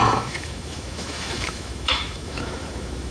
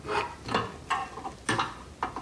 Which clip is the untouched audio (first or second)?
second